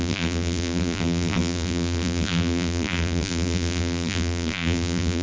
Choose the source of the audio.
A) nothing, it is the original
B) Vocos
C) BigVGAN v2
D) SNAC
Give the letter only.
C